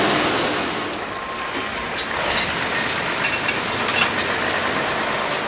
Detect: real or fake real